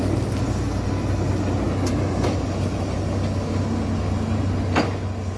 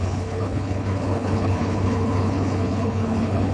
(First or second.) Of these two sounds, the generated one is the second